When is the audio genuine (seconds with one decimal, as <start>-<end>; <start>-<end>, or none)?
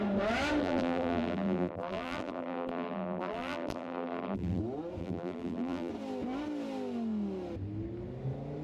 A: 0.0-0.6; 4.6-5.0; 5.9-8.6